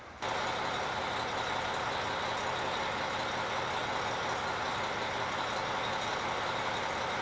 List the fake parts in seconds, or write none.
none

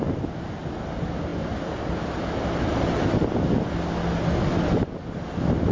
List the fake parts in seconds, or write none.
none